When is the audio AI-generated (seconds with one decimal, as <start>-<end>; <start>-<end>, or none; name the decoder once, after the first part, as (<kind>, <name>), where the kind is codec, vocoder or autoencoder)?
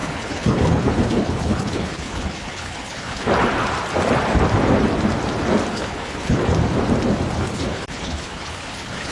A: 0.0-3.3 (codec, HILCodec); 5.7-6.4; 7.4-9.1